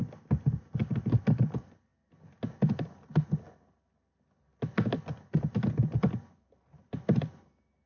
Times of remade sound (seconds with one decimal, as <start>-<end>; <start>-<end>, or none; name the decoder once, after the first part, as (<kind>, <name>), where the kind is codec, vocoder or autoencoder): none